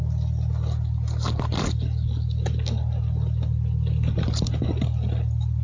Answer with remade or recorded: recorded